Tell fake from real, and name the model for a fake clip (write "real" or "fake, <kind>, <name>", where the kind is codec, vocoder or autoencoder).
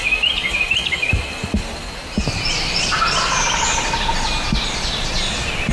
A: real